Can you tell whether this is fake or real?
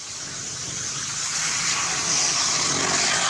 real